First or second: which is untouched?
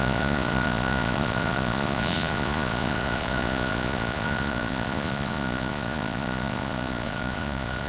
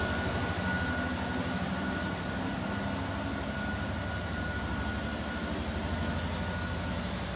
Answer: second